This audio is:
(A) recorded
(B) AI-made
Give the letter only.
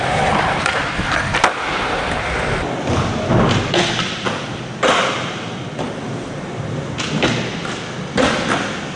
A